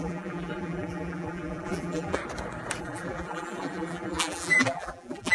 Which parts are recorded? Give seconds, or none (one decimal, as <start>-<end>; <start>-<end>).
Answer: 2.2-2.8